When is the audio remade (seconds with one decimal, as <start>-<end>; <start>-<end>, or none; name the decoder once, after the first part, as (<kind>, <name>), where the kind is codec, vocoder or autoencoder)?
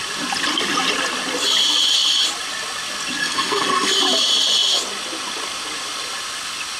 3.2-4.0 (codec, SNAC)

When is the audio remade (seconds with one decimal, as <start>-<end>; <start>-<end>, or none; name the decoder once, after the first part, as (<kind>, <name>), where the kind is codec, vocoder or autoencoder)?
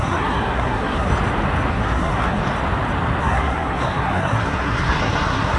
0.0-1.1 (codec, SNAC); 1.7-2.4; 3.2-5.6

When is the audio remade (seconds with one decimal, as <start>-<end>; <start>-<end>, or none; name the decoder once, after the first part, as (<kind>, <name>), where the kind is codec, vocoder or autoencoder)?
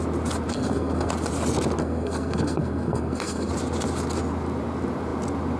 0.5-1.1 (codec, SNAC); 1.8-3.5